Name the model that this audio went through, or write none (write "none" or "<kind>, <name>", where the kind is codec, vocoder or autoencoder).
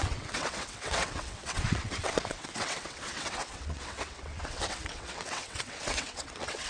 vocoder, WaveNeXt